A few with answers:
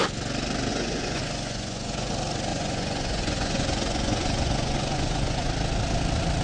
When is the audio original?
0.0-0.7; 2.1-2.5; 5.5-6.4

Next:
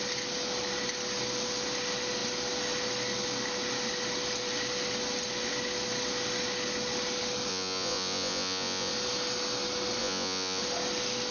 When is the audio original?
0.0-7.5; 8.9-10.0; 10.6-11.3

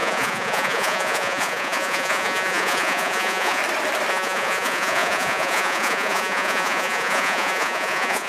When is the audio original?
3.6-4.1

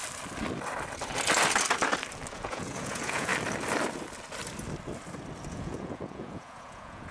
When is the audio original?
0.0-2.3; 3.3-5.5

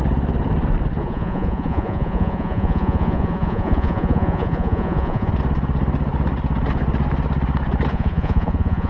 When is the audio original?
0.0-1.0; 5.3-7.9

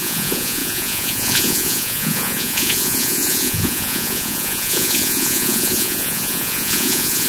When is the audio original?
none

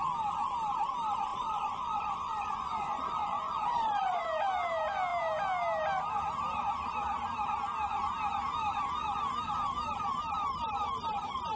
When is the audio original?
0.0-1.3; 4.2-11.6

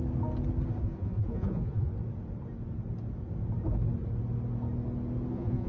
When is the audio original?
0.0-0.8; 1.9-5.3